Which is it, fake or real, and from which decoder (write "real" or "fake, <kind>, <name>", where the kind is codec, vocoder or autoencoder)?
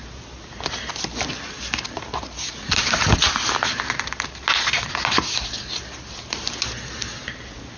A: real